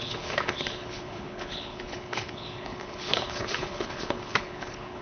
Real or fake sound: fake